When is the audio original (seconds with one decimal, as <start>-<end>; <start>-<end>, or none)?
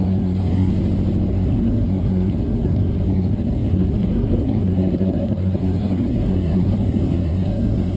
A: 0.7-1.3